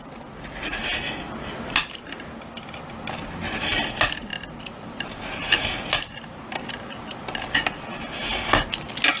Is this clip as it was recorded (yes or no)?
yes